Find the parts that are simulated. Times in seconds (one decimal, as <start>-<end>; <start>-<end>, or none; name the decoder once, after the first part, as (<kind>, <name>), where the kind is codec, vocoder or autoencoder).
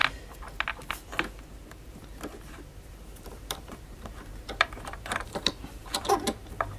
3.3-6.8 (vocoder, BigVGAN v2)